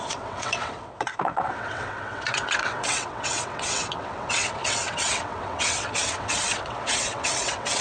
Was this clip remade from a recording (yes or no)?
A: yes